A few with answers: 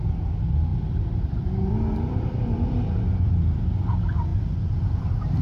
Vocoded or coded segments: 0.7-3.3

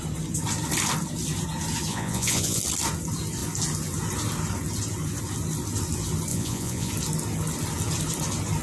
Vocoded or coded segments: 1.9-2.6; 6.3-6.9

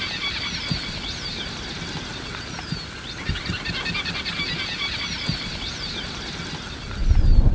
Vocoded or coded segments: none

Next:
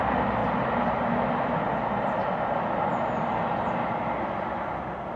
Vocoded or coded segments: none

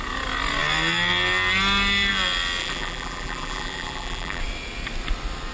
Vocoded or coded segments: 2.6-4.4